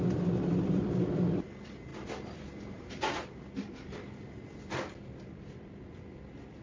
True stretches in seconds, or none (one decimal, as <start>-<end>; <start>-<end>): 1.9-4.6